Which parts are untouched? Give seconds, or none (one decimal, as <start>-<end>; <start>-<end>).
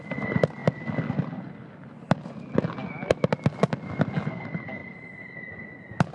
0.0-4.8; 5.5-6.1